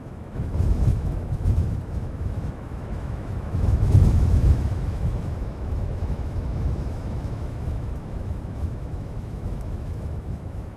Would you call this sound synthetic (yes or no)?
yes